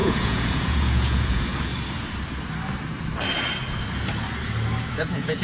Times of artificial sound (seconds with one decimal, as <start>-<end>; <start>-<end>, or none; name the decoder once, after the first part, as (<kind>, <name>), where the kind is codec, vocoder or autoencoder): 0.0-1.7 (vocoder, Vocos); 4.9-5.4